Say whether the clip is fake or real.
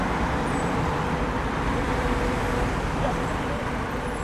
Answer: fake